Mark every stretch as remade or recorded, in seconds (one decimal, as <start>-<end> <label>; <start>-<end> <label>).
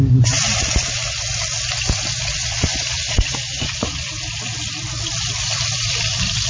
0.0-2.4 recorded; 2.4-4.1 remade; 4.1-6.5 recorded